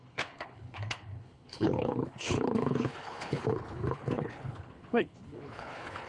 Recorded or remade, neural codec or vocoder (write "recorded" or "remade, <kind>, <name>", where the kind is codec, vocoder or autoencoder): remade, codec, HILCodec